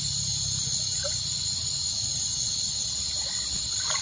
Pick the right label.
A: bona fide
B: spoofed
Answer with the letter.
A